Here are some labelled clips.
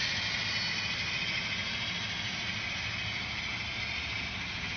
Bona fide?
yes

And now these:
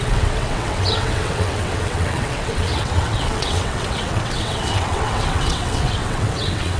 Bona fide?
no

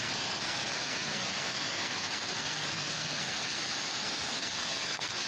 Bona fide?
no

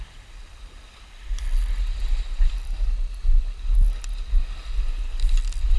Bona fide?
yes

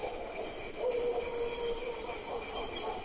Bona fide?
yes